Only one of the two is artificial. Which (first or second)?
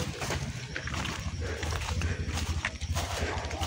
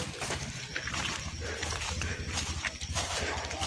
first